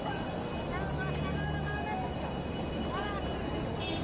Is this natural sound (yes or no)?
yes